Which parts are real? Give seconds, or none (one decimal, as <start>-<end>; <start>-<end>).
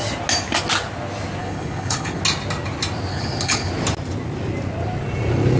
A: 0.0-1.4; 2.2-3.1; 3.7-5.6